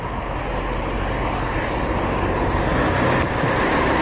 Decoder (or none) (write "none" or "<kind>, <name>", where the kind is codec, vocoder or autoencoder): none